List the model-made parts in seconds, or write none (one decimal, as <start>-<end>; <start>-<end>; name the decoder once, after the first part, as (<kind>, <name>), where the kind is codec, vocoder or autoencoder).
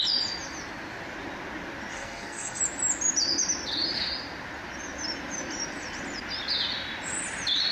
1.9-2.6 (codec, SNAC)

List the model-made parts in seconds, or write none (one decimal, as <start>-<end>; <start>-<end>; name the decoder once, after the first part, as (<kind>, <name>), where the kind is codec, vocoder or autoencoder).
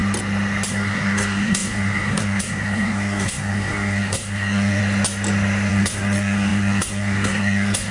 0.7-4.8 (codec, SNAC); 5.7-7.9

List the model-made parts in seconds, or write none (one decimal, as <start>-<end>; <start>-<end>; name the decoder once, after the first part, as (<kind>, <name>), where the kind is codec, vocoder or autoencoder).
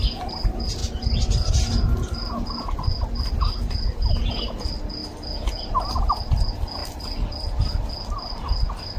none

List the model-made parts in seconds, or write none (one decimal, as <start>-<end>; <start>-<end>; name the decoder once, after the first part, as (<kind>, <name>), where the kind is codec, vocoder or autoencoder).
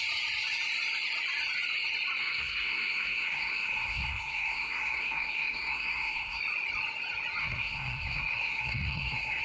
2.2-6.4 (codec, SNAC); 7.4-9.4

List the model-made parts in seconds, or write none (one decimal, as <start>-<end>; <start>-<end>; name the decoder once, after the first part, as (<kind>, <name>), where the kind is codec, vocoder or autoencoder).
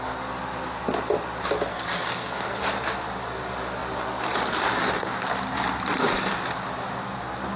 1.7-2.6 (codec, SNAC)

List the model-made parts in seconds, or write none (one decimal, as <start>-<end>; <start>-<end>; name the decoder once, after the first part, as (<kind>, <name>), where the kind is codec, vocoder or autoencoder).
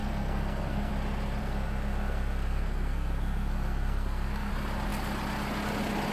0.0-0.9 (codec, SNAC); 1.4-4.5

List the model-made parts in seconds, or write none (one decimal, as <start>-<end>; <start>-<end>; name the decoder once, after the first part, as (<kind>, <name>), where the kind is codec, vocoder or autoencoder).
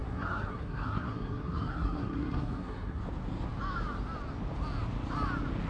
0.0-3.0 (codec, SNAC)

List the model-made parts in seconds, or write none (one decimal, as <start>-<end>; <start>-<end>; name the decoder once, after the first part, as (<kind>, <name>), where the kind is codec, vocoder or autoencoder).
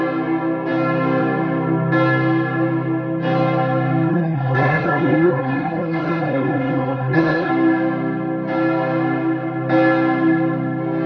4.1-7.5 (codec, SNAC)